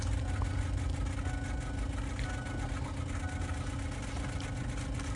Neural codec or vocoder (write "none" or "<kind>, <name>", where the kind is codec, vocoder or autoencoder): none